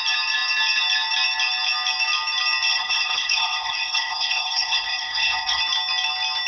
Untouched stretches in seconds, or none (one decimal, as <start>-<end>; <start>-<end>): 0.0-2.7; 5.6-6.5